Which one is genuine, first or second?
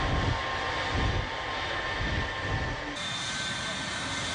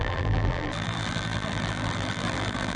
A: first